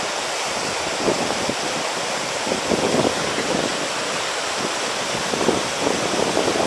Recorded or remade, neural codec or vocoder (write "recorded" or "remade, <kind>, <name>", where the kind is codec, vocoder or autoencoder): recorded